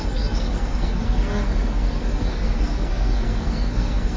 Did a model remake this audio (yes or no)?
yes